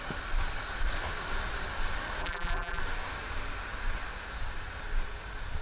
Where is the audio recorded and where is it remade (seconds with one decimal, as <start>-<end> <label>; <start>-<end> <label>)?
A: 0.0-2.2 recorded; 2.2-2.8 remade; 2.8-5.6 recorded